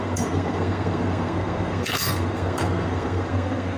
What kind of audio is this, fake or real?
fake